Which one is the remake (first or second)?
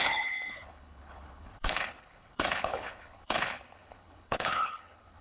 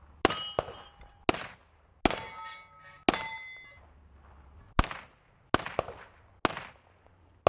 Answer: first